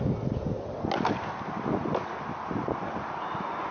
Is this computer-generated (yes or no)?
no